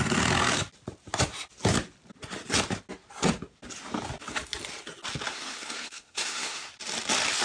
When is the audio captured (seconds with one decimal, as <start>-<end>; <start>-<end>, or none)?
0.0-5.3; 6.7-7.4